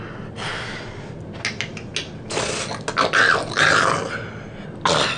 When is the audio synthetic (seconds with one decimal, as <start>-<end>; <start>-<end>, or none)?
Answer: none